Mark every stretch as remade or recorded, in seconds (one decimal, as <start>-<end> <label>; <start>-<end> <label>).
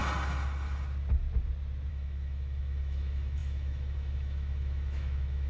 0.0-1.9 recorded; 1.9-5.5 remade